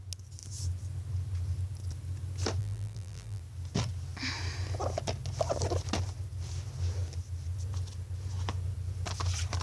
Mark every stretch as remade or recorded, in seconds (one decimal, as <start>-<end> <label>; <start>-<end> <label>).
0.0-2.6 recorded; 2.6-3.4 remade; 3.4-9.6 recorded